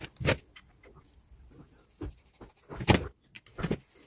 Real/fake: real